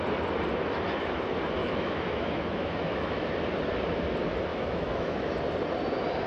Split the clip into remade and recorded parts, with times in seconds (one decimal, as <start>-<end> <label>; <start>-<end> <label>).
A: 0.0-1.6 recorded; 1.6-3.3 remade; 3.3-4.5 recorded; 4.5-5.3 remade; 5.3-6.3 recorded